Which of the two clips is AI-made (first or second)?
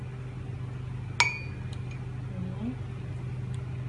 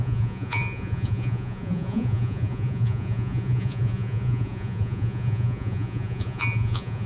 second